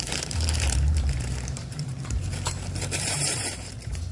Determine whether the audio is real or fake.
fake